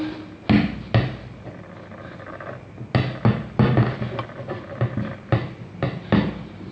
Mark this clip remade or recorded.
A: recorded